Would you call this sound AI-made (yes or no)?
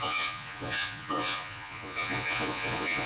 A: yes